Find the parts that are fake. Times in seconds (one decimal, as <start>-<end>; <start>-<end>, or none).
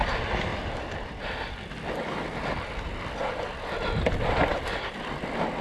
0.5-3.9